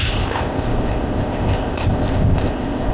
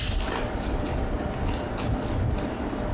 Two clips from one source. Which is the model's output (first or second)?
first